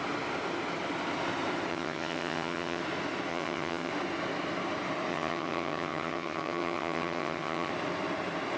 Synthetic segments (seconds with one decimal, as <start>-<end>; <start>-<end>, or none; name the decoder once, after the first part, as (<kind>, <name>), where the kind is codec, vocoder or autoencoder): 1.7-2.8 (vocoder, HiFi-GAN); 3.3-3.9; 5.1-7.7